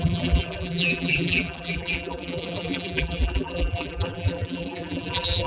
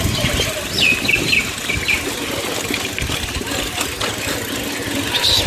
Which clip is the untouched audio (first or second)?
second